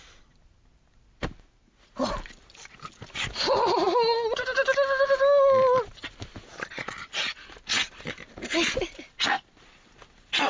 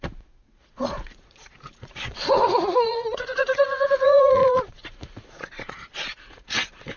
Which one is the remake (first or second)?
second